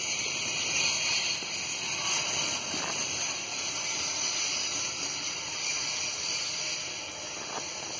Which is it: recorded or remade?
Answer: recorded